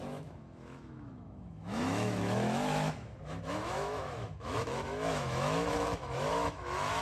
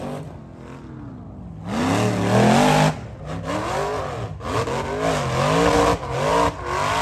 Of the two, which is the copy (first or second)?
first